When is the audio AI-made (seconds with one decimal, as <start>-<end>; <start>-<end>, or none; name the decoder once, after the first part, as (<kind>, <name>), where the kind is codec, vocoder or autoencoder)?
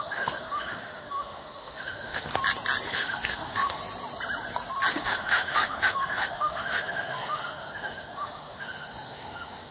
0.0-2.3 (autoencoder, DAC-VAE); 2.9-3.8; 4.9-9.7